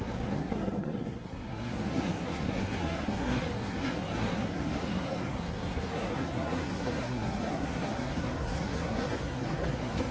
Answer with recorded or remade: remade